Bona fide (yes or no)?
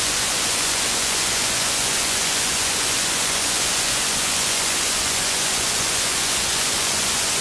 no